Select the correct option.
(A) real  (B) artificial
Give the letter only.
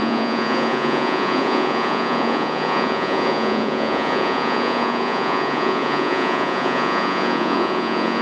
B